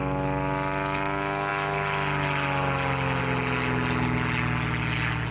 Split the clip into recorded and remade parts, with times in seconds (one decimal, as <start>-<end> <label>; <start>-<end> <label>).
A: 0.0-5.3 recorded